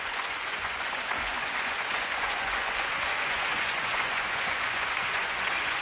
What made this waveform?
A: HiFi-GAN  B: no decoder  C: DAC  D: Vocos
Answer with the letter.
D